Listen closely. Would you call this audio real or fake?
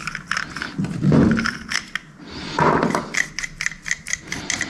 real